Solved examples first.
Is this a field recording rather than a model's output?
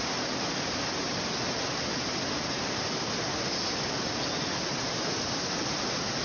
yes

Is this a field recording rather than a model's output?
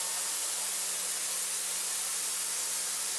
yes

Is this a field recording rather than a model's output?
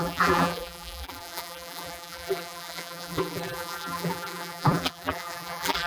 no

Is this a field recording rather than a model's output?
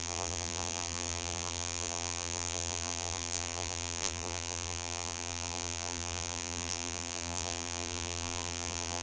no